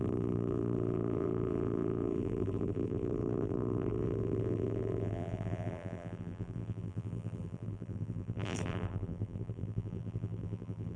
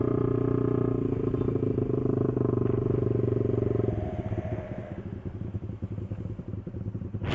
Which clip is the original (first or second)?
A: second